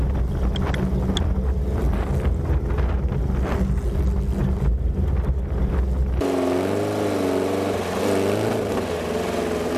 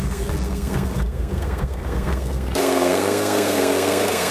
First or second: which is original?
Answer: first